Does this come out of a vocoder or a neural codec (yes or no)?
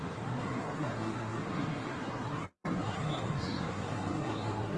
yes